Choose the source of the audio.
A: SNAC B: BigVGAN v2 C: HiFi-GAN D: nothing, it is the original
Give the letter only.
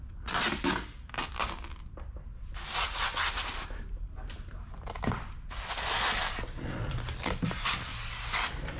D